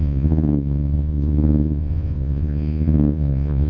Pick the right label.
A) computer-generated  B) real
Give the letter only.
A